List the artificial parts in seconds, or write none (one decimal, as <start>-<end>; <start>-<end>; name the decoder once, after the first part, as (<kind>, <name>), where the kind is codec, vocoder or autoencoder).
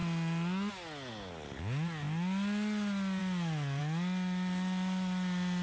none